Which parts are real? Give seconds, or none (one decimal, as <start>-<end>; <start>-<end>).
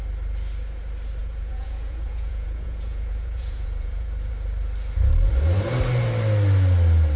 0.0-1.2; 4.3-7.2